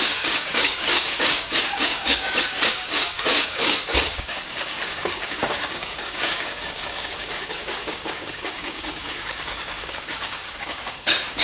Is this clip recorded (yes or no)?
no